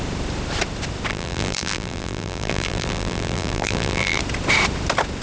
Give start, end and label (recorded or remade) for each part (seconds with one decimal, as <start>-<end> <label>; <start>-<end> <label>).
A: 0.0-1.1 recorded; 1.1-4.2 remade; 4.2-5.2 recorded